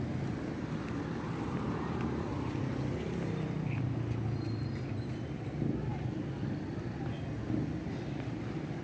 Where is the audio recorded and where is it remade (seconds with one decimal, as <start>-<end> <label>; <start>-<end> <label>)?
0.0-8.8 recorded

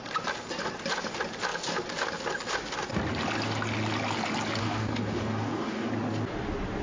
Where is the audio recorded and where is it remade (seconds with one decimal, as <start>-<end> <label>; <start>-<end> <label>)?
0.0-4.6 recorded; 4.6-5.9 remade; 5.9-6.8 recorded

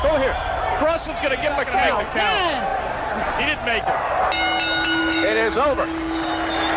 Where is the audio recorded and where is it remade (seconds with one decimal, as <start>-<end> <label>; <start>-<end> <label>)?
0.0-5.0 recorded; 5.0-6.3 remade; 6.3-6.8 recorded

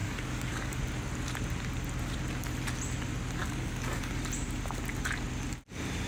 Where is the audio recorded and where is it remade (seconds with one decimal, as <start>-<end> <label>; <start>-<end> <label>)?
0.0-0.8 remade; 0.8-3.4 recorded; 3.4-4.1 remade; 4.1-6.1 recorded

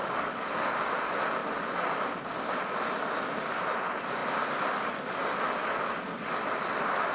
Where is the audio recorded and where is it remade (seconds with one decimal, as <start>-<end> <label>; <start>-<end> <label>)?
0.0-0.8 remade; 0.8-7.1 recorded

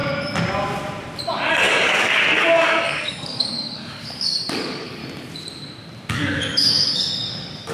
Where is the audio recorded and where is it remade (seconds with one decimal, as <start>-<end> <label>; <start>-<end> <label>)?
0.0-1.5 recorded; 1.5-5.0 remade; 5.0-6.1 recorded; 6.1-7.7 remade